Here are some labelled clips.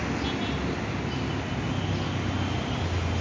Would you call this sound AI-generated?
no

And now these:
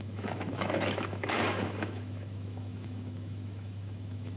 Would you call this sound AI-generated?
yes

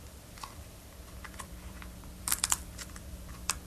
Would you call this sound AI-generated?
yes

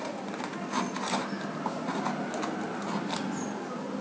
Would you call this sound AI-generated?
no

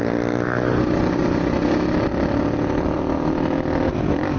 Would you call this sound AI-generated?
no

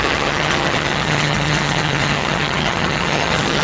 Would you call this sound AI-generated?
yes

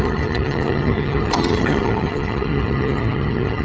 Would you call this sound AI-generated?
yes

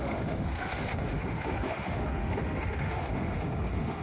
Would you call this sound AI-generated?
yes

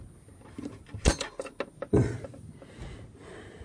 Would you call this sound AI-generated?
no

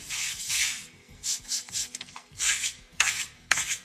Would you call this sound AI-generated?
yes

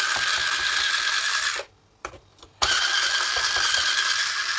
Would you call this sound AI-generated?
no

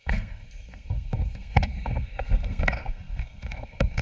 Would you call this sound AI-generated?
yes